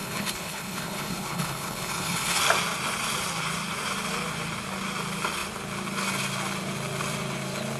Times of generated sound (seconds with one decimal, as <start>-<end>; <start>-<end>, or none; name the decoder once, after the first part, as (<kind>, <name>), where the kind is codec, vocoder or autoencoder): 0.0-2.4 (codec, HILCodec)